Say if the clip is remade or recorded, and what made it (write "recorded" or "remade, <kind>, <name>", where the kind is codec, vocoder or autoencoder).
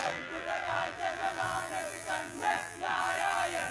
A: remade, vocoder, BigVGAN v2